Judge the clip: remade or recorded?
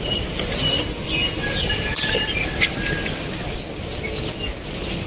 recorded